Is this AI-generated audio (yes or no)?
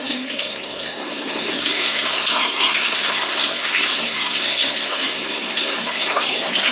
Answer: yes